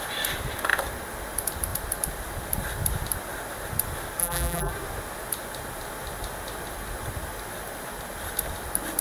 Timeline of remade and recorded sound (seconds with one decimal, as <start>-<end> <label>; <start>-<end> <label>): 0.0-4.2 recorded; 4.2-4.7 remade; 4.7-9.0 recorded